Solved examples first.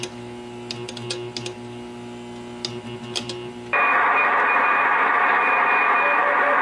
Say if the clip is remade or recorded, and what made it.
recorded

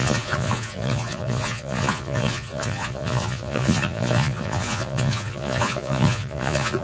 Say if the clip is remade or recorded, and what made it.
remade, vocoder, Vocos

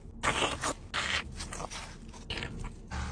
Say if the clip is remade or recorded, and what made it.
recorded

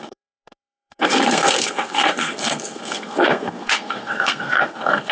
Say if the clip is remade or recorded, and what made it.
remade, codec, SNAC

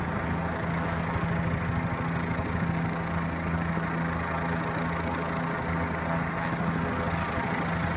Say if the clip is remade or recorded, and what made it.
recorded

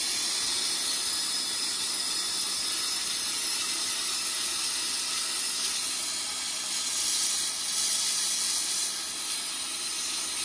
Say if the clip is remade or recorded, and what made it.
recorded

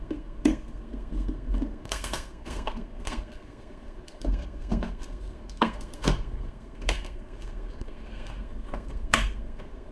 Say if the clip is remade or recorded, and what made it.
remade, codec, SNAC